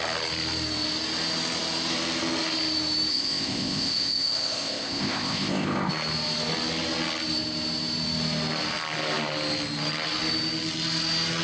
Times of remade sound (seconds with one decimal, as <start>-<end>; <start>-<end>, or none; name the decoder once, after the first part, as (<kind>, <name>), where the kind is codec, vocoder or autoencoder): 3.1-5.9 (codec, ZipCodec)